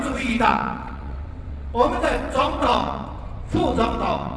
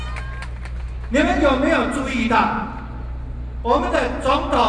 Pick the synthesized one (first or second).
first